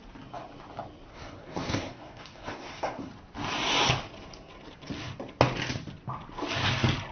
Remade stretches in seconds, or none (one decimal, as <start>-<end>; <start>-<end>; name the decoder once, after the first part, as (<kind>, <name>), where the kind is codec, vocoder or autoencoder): 1.1-3.1 (codec, SNAC)